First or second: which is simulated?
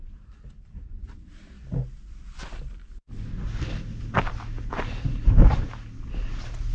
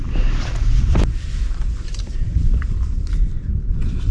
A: second